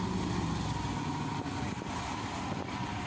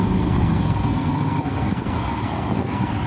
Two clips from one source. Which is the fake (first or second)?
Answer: second